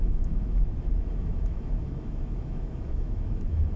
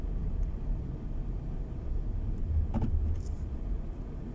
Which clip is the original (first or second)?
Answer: second